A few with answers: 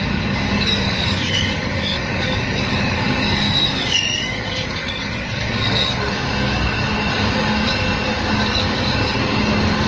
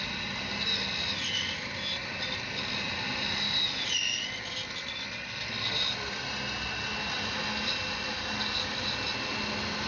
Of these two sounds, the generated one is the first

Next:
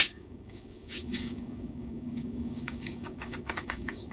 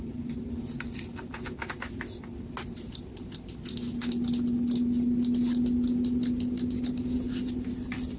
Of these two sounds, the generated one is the first